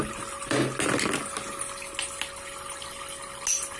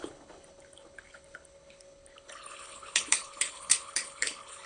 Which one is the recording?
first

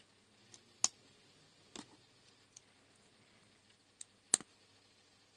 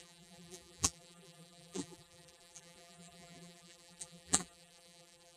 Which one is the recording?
first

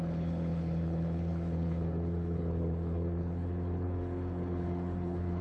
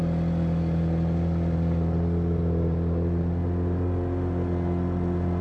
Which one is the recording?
second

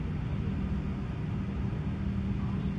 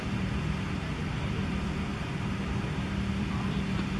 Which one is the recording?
first